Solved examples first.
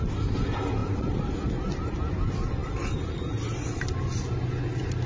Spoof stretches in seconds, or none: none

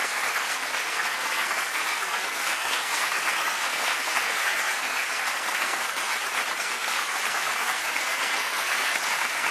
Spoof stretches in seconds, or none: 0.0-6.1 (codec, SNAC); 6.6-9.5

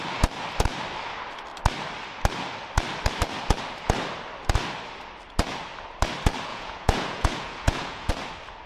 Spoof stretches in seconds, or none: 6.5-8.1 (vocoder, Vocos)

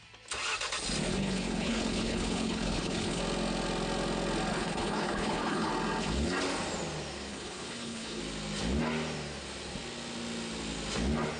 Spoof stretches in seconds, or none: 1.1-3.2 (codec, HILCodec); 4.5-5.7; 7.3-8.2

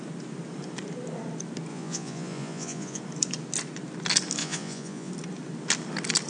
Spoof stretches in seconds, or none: 1.7-3.0 (vocoder, Vocos); 4.4-5.1

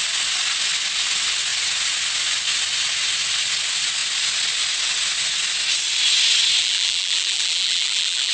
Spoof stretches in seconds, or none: 6.6-8.3 (vocoder, BigVGAN v2)